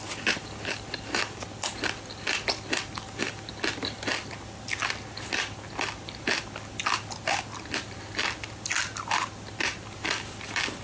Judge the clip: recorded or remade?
recorded